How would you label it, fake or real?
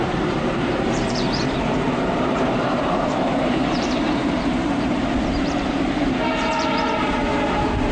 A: fake